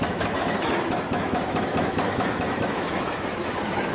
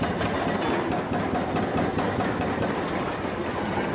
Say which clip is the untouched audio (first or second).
second